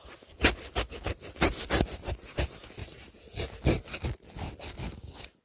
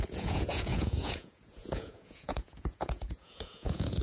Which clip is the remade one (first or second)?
second